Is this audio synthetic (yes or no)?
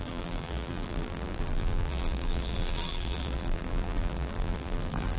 yes